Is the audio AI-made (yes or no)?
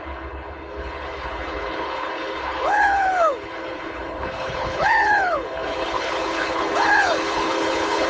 yes